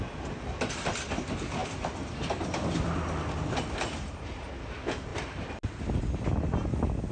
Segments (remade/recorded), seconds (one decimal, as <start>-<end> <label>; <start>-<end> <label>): 0.0-7.1 recorded